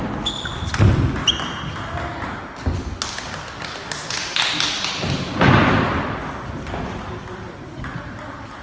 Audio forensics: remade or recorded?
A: recorded